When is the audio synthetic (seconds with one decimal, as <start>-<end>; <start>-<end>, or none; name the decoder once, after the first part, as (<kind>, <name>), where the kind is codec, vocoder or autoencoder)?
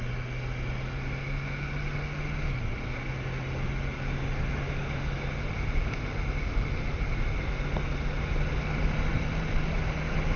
9.1-10.0 (vocoder, BigVGAN v2)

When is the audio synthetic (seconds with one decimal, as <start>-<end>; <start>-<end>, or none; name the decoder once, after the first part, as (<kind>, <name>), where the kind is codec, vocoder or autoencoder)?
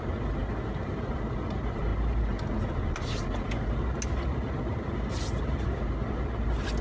none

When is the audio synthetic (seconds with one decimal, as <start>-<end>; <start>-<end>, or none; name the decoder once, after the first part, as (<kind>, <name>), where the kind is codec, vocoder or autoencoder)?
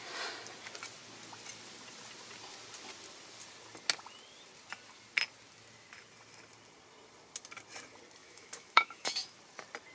8.2-9.4 (autoencoder, DAC-VAE)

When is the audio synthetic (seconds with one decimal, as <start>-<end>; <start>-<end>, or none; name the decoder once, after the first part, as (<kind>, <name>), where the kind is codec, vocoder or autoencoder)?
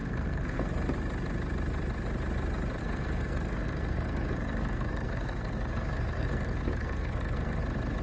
0.0-0.7 (codec, SNAC); 2.8-7.6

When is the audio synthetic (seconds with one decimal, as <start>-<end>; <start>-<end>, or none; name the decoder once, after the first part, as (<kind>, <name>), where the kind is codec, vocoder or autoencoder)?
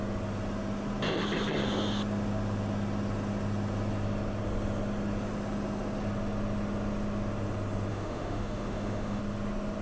7.9-9.2 (autoencoder, DAC-VAE)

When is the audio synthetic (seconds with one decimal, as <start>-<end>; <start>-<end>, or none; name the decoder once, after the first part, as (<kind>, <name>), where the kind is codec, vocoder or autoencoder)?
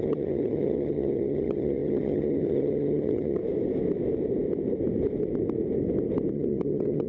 0.0-3.4 (vocoder, HiFi-GAN); 6.3-7.1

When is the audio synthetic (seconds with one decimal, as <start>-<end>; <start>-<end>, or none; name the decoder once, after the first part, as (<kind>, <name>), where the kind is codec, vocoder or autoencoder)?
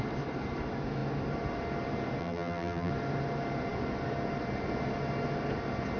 2.2-2.9 (vocoder, BigVGAN v2)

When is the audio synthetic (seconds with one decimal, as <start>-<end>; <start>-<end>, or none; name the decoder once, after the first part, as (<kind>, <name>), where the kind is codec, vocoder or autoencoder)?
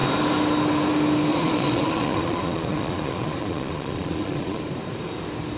1.3-4.6 (vocoder, Vocos)